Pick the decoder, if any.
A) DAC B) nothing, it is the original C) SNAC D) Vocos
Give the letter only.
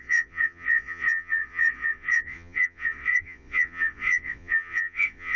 D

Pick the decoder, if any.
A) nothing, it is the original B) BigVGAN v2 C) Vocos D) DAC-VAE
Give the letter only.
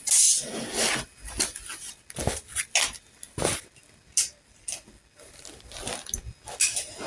A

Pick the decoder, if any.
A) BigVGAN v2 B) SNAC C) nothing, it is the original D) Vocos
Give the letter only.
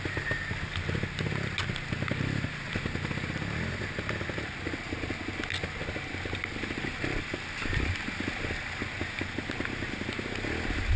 C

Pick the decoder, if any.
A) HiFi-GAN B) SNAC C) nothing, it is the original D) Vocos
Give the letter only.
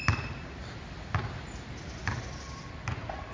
C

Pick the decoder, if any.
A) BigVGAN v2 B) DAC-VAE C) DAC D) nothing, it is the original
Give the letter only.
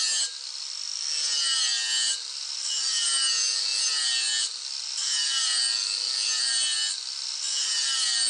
D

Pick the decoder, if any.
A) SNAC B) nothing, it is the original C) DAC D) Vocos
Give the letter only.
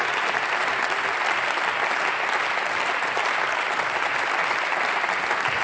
B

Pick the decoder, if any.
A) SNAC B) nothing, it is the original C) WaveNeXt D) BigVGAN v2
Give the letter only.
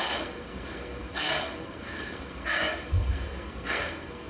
A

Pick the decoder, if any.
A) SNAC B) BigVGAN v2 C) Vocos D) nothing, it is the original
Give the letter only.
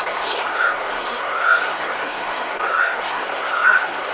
A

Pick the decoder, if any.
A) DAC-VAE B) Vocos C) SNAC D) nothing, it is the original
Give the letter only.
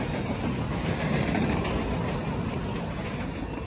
D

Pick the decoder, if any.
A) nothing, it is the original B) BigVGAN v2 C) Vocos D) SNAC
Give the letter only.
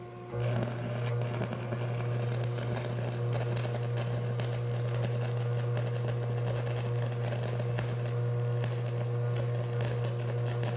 A